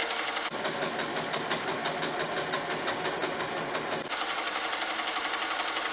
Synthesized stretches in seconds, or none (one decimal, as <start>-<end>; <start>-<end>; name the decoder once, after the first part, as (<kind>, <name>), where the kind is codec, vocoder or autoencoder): none